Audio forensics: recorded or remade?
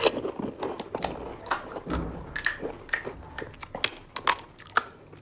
recorded